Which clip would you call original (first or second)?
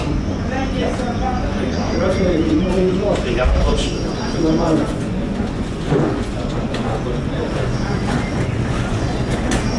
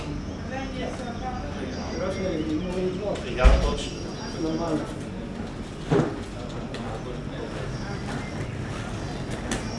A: second